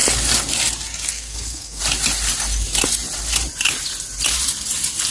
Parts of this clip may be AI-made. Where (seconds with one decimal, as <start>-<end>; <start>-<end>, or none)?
1.1-1.8